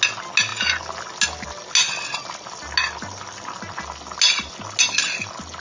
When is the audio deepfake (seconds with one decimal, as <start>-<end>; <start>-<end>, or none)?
none